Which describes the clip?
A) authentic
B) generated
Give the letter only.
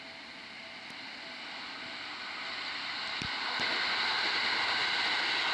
A